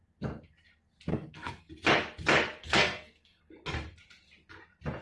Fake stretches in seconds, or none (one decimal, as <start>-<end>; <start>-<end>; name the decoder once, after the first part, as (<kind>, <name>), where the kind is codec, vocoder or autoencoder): 1.1-1.7 (codec, SNAC); 2.6-3.4

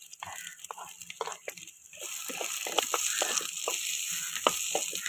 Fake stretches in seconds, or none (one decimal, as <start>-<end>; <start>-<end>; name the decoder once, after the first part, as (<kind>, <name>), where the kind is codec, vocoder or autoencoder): none